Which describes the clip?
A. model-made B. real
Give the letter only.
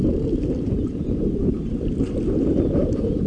B